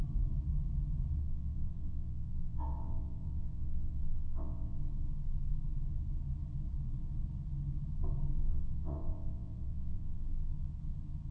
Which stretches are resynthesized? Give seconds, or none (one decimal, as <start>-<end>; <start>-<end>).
1.2-4.8; 8.5-10.2